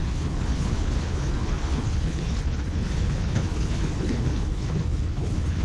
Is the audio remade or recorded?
remade